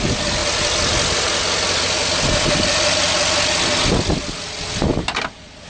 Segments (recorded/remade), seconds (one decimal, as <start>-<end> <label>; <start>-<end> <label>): 0.0-5.7 recorded